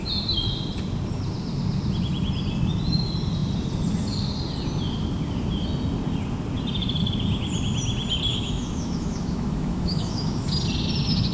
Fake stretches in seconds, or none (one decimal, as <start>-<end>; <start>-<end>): 8.3-10.5

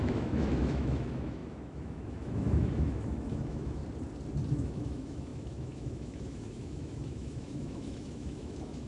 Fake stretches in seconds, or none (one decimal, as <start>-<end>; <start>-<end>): 0.0-3.8; 4.5-8.9

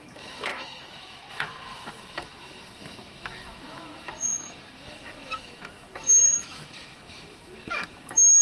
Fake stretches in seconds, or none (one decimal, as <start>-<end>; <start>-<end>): 0.0-8.4

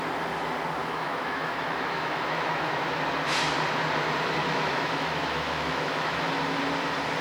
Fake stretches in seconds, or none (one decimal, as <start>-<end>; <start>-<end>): 0.8-3.0; 4.4-6.3

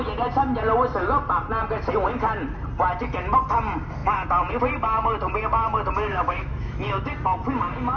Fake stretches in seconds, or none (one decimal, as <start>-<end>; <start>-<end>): 6.1-7.1

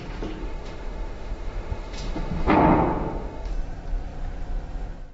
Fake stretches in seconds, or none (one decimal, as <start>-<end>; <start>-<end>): 0.4-3.5